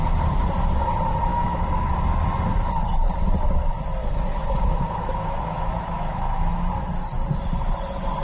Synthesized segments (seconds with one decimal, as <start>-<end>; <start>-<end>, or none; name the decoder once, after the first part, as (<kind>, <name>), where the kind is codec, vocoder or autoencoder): 1.3-1.9 (autoencoder, DAC-VAE); 4.0-6.5